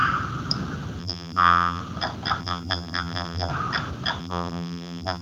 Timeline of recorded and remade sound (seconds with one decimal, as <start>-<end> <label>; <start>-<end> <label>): 0.0-1.0 recorded; 1.0-1.8 remade; 1.8-2.4 recorded; 2.4-3.5 remade; 3.5-4.2 recorded; 4.2-5.2 remade

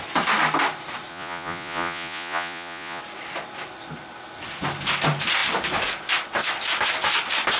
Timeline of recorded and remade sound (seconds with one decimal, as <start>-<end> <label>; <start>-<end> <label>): 0.0-1.1 recorded; 1.1-3.0 remade; 3.0-7.6 recorded

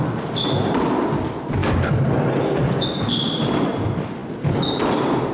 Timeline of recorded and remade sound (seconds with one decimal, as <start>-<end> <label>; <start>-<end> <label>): 0.0-5.3 recorded

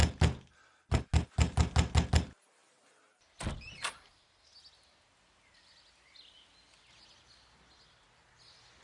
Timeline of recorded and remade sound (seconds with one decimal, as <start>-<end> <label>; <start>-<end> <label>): 0.0-8.8 recorded